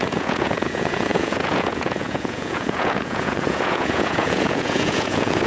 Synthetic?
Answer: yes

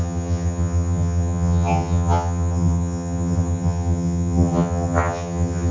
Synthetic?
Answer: yes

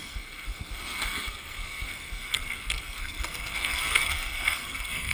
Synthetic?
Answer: yes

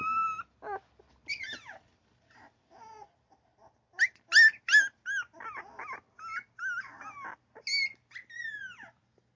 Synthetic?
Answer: no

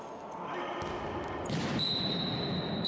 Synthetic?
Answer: no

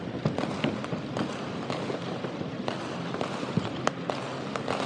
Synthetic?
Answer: no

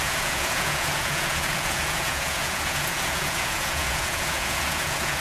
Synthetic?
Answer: yes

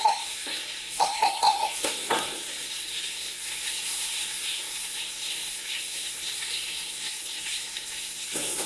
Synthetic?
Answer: yes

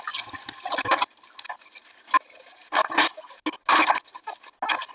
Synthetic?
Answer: no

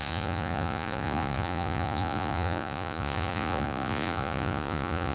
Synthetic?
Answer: yes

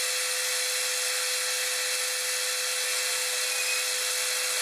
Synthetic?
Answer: no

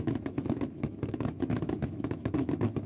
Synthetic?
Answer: yes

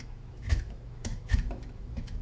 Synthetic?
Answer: yes